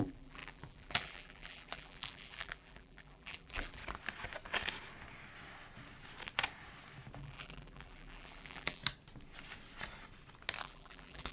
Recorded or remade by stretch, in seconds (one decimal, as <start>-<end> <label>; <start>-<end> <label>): 0.0-3.8 remade; 3.8-7.2 recorded; 7.2-8.8 remade; 8.8-10.6 recorded; 10.6-11.3 remade